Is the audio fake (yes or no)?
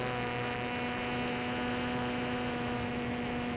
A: no